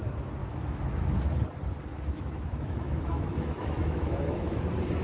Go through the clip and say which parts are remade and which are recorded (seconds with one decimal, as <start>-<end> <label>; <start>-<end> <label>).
0.0-0.4 recorded; 0.4-0.9 remade; 0.9-1.9 recorded; 1.9-4.6 remade; 4.6-5.0 recorded